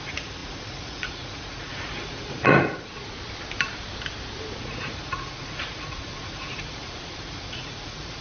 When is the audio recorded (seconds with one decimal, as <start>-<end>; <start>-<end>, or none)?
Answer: 2.9-4.6